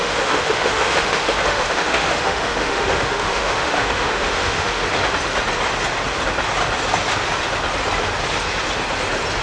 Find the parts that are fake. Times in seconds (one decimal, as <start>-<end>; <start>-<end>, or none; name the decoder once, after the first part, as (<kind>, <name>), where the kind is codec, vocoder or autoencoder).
0.0-4.8 (autoencoder, DAC-VAE)